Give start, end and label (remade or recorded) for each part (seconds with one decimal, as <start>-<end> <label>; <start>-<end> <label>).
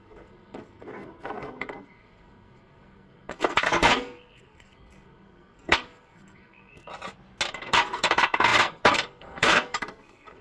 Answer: 0.0-6.9 remade; 6.9-7.5 recorded; 7.5-10.4 remade